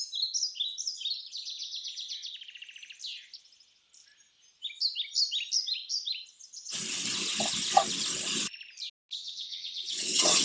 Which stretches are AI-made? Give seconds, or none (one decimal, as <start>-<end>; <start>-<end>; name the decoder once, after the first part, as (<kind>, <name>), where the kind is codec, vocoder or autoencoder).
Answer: 9.2-10.4 (vocoder, WaveNeXt)